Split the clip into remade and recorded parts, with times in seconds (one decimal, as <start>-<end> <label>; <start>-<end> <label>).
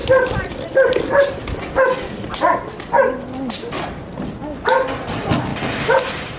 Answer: 0.0-5.5 recorded; 5.5-6.4 remade